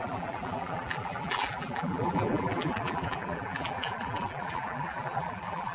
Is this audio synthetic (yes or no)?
yes